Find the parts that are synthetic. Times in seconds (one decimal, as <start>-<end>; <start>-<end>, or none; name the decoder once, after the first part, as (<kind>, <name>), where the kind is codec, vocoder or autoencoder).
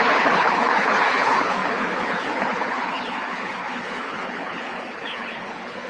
0.0-5.9 (codec, HILCodec)